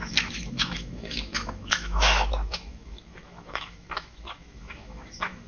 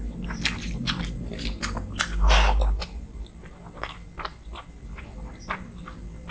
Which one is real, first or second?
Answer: second